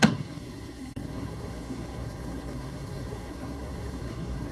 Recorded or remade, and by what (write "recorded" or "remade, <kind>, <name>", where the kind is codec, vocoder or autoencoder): remade, codec, SNAC